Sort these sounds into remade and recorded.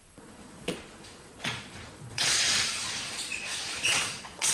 remade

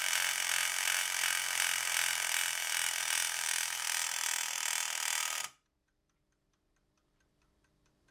remade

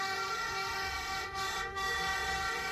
remade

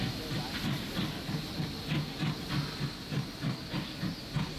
recorded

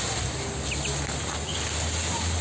recorded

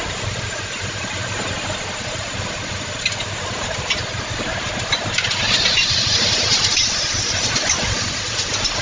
recorded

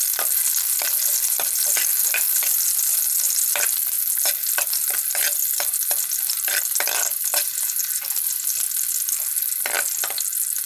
recorded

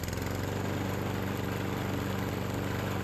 recorded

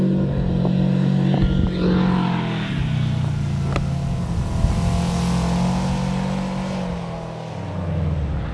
recorded